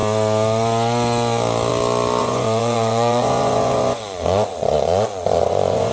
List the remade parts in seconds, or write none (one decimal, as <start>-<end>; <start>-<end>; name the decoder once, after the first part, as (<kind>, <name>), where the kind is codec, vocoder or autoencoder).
2.2-5.9 (vocoder, Vocos)